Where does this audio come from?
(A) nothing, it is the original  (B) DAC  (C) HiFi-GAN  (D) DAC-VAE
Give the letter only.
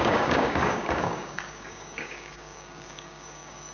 B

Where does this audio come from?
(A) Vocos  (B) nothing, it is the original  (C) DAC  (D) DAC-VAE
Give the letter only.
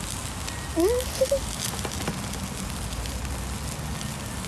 B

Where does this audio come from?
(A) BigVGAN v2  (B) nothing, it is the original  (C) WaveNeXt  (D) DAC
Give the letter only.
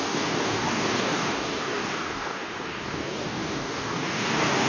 D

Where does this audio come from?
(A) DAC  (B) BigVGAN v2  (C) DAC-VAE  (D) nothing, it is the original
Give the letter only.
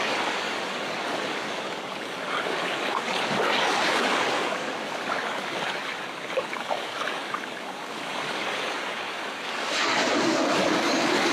A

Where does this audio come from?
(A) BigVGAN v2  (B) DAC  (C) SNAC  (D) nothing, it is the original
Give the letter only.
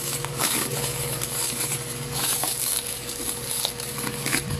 B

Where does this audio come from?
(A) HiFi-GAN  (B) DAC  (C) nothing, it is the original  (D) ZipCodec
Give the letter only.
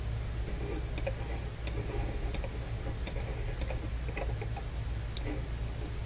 C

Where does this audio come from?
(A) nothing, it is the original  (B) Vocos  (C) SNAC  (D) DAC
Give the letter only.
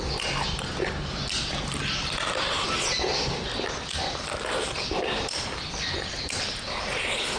A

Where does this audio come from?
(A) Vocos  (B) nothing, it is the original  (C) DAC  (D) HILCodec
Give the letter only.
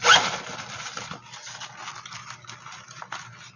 B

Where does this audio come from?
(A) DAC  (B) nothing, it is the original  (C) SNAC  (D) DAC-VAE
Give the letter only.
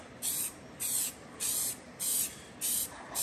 B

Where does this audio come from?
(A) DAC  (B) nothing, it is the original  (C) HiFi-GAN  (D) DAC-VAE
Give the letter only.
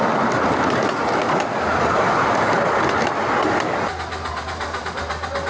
B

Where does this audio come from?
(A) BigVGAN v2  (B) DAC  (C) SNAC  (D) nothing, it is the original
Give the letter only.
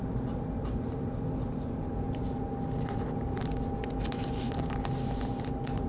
D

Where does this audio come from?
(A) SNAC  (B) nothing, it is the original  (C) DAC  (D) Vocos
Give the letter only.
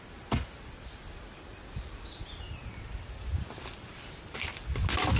B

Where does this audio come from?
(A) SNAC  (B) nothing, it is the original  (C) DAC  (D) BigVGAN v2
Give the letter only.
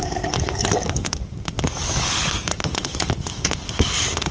C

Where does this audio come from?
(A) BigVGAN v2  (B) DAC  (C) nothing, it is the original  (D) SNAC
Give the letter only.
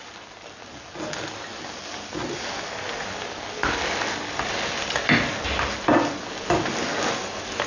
C